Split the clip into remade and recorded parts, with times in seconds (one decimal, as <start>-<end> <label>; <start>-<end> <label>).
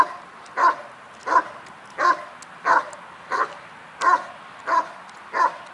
0.0-5.7 recorded